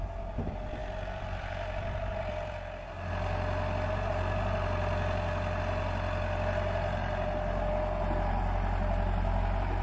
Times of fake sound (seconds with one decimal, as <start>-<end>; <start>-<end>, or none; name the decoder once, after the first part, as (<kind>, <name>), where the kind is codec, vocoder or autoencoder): 0.8-3.1 (vocoder, BigVGAN v2)